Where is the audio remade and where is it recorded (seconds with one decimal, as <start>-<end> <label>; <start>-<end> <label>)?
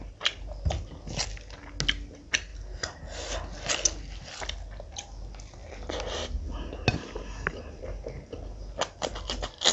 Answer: 0.0-9.7 recorded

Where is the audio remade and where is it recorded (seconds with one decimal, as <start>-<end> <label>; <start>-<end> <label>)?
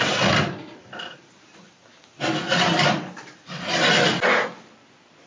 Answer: 0.0-5.3 recorded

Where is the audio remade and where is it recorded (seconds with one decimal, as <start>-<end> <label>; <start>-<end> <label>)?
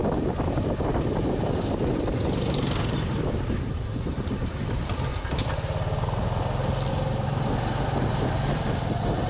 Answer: 0.0-0.9 recorded; 0.9-2.2 remade; 2.2-4.4 recorded; 4.4-5.1 remade; 5.1-6.9 recorded; 6.9-9.3 remade